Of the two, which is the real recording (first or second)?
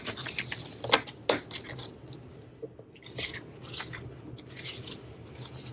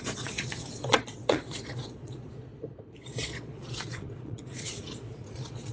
first